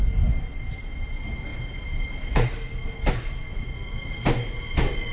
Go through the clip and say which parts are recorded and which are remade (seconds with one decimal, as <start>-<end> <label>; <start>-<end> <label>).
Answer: 0.0-5.1 recorded